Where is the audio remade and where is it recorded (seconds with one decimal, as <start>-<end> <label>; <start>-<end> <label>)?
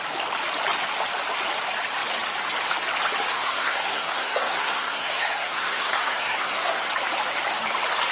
0.0-3.3 recorded; 3.3-6.9 remade; 6.9-8.1 recorded